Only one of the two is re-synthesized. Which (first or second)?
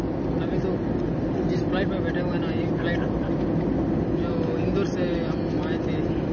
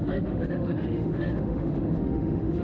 second